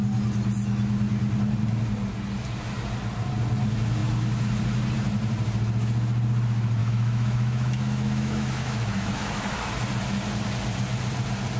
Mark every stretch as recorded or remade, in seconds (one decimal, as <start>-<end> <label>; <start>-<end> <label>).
0.0-6.8 recorded; 6.8-9.7 remade; 9.7-11.6 recorded